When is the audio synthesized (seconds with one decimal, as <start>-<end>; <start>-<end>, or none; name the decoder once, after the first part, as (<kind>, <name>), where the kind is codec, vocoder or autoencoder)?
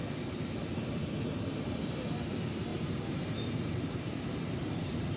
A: 1.0-1.9 (vocoder, BigVGAN v2); 2.7-5.2